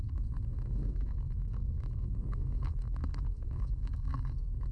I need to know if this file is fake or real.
fake